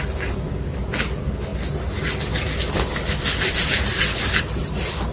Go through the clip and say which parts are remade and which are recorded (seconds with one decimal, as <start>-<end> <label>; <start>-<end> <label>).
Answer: 0.0-5.1 recorded